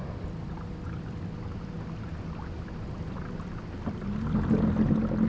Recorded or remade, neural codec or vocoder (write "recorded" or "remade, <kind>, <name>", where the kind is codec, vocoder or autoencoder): recorded